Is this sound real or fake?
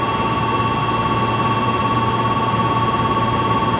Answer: real